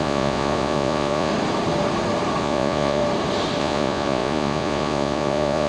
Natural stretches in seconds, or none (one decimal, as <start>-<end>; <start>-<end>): 1.3-2.4; 3.0-3.6